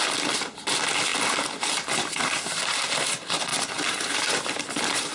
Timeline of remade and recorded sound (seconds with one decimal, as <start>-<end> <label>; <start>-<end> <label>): 0.0-1.1 remade; 1.1-2.2 recorded; 2.2-5.1 remade